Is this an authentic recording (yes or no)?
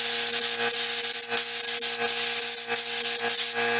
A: yes